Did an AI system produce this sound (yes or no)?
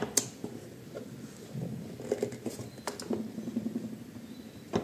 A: no